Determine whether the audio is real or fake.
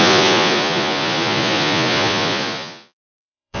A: fake